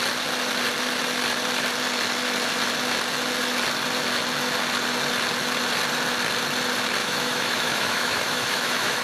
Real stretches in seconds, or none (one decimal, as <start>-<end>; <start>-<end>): 0.0-7.0